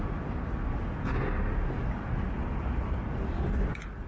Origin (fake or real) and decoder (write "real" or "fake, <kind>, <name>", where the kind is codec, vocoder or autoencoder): real